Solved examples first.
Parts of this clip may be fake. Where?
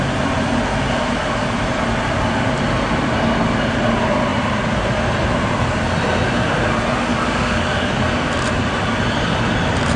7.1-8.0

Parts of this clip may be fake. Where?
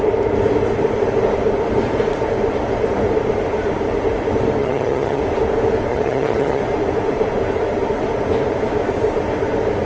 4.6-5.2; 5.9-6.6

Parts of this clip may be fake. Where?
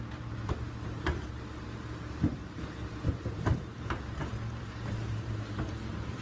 0.0-2.4; 3.1-6.2